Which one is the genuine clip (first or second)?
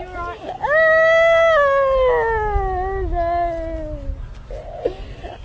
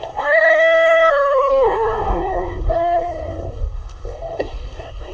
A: first